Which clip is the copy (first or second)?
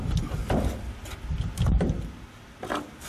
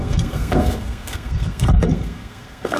second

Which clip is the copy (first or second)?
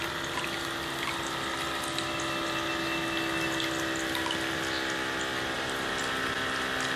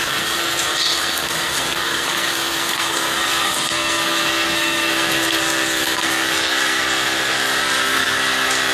second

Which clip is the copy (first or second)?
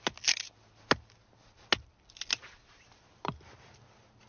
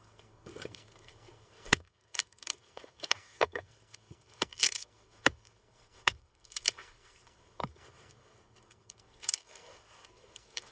second